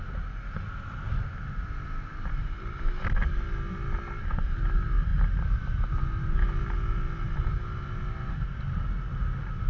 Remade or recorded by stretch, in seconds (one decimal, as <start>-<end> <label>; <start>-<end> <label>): 0.0-9.7 recorded